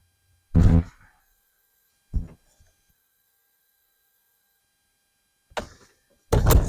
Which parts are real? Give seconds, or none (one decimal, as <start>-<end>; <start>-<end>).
0.0-1.2; 1.9-2.9; 4.6-6.7